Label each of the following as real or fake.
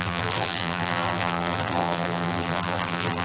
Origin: fake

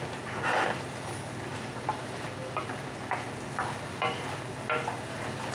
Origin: real